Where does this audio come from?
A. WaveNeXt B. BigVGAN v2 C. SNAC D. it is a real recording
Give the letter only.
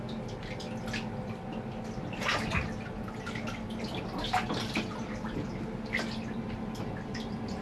D